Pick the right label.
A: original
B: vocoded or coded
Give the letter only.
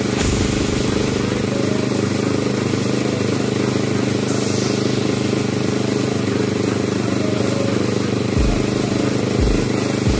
A